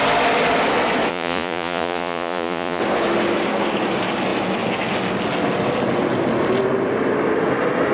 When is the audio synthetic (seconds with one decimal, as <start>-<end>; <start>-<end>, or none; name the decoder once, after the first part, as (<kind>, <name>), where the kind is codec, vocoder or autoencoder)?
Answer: 1.1-2.8 (vocoder, Vocos)